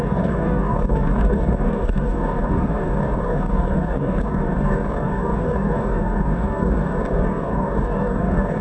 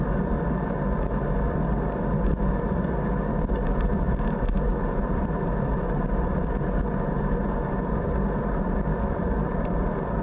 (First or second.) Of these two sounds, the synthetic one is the first